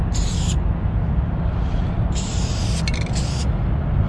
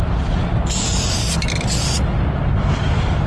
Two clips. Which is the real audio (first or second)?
first